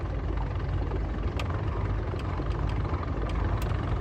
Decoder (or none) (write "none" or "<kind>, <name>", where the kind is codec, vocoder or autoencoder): none